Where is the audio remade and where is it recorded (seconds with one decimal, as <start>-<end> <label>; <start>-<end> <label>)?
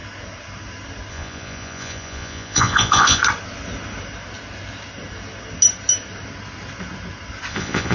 0.0-1.1 recorded; 1.1-3.2 remade; 3.2-7.5 recorded; 7.5-7.9 remade